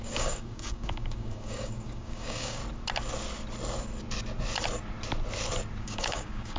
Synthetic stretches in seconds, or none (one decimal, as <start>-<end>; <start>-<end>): 0.0-2.6; 5.8-6.6